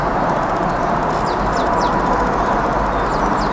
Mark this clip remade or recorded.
recorded